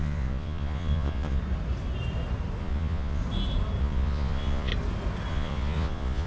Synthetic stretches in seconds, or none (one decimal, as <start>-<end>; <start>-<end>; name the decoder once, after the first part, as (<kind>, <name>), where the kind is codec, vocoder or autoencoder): 0.0-1.4 (vocoder, Vocos); 2.6-3.2; 3.8-4.7; 5.3-6.3